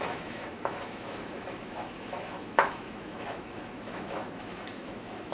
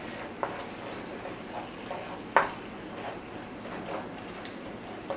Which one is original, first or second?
second